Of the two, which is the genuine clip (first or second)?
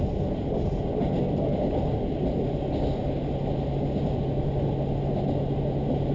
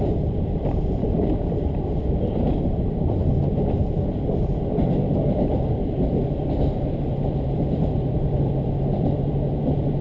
first